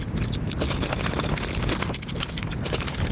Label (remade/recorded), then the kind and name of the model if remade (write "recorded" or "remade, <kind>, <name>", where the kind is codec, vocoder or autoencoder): recorded